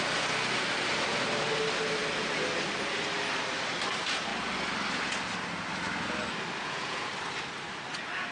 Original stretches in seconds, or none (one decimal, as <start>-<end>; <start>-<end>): 0.0-6.6; 7.1-8.3